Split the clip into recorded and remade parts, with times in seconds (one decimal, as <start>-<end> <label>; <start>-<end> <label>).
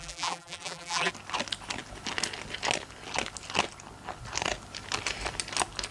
0.0-1.1 remade; 1.1-5.9 recorded